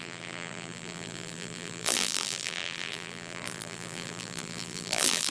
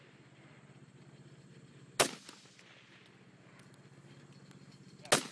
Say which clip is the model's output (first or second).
first